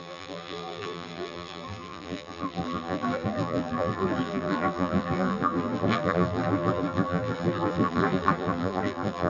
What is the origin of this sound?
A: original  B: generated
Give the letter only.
B